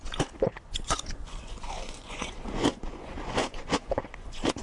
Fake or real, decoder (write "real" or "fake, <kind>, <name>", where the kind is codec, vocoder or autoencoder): fake, vocoder, Vocos